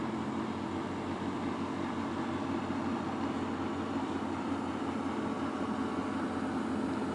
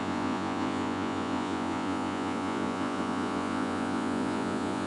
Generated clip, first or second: second